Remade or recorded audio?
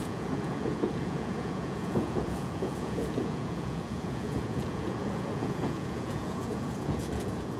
remade